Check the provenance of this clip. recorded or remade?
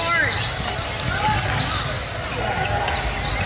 recorded